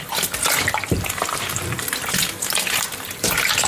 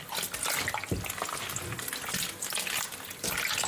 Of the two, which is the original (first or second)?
second